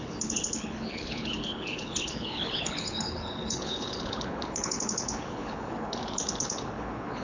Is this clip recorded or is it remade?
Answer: remade